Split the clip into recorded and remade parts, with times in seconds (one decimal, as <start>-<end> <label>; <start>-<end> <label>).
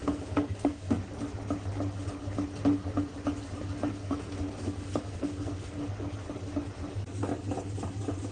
0.0-1.0 remade; 1.0-3.9 recorded; 3.9-5.9 remade; 5.9-8.3 recorded